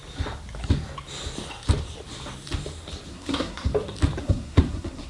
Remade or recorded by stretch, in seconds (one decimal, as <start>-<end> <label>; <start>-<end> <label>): 0.0-3.1 recorded; 3.1-3.7 remade; 3.7-4.2 recorded; 4.2-5.1 remade